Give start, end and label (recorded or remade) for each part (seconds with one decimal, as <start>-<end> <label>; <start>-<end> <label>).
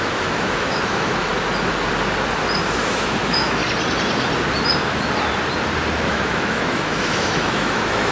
0.0-1.3 remade; 1.3-2.8 recorded; 2.8-3.6 remade; 3.6-6.1 recorded; 6.1-8.1 remade